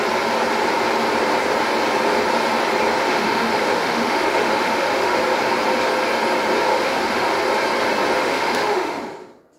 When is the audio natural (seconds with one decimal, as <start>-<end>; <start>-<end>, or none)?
0.0-3.0; 5.2-6.7; 7.3-8.2; 9.0-9.6